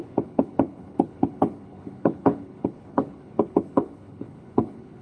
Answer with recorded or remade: remade